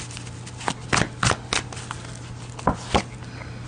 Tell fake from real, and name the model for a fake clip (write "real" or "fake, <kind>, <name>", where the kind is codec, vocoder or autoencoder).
real